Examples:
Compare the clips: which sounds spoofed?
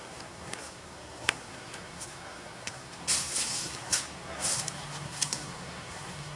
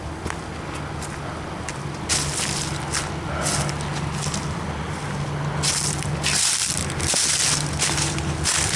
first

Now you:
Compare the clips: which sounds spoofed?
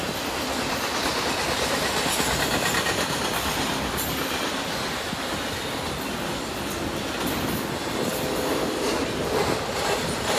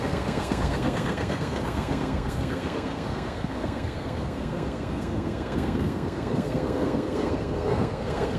second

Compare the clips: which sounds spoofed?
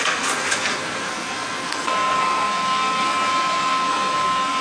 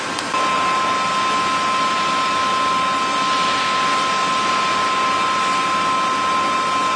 first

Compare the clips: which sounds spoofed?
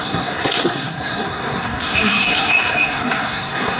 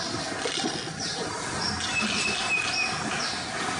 first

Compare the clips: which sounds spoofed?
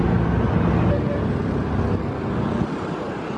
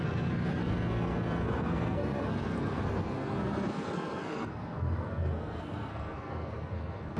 second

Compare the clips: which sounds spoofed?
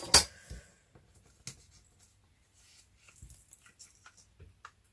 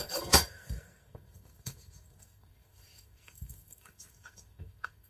second